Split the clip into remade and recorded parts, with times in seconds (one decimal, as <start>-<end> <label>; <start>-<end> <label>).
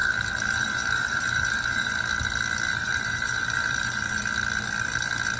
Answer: 0.0-2.0 remade; 2.0-2.7 recorded; 2.7-4.2 remade; 4.2-5.4 recorded